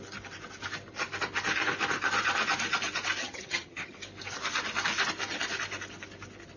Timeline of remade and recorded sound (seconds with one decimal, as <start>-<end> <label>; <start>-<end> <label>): 0.0-3.2 recorded; 3.2-4.0 remade; 4.0-6.6 recorded